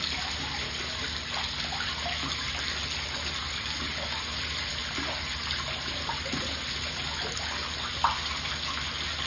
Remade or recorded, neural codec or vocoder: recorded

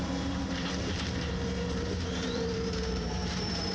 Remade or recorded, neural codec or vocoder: remade, vocoder, BigVGAN v2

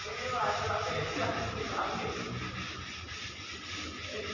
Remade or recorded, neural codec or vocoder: recorded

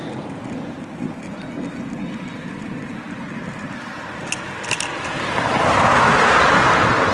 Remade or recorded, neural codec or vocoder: recorded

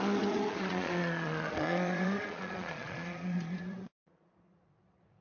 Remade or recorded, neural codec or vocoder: remade, vocoder, Vocos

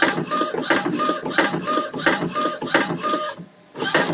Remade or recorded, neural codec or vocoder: remade, vocoder, BigVGAN v2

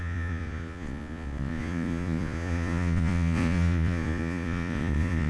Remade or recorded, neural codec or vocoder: remade, vocoder, Vocos